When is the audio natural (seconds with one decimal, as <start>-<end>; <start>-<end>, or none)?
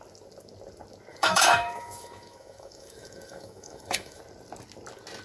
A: 0.0-1.1; 4.2-5.2